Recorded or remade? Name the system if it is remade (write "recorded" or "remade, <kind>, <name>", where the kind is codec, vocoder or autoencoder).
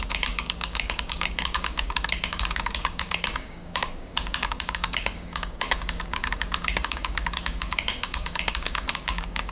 remade, codec, DAC